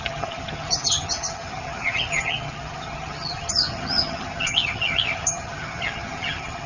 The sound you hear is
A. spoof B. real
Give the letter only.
A